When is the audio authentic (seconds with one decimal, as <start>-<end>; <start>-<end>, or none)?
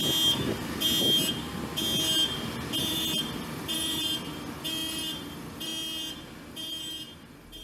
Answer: 0.0-2.9; 5.7-6.5